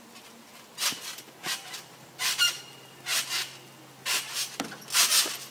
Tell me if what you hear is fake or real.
real